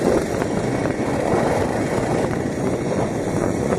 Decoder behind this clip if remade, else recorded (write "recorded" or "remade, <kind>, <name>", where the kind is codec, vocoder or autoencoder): remade, vocoder, Vocos